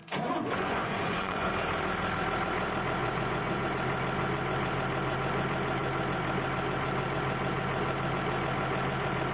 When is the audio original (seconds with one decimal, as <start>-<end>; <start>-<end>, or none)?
1.5-3.0; 3.6-9.3